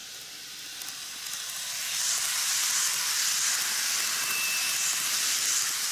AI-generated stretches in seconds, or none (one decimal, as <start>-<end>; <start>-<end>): none

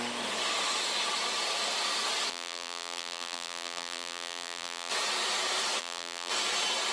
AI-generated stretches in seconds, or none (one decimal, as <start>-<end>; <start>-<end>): 2.3-4.9; 5.8-6.3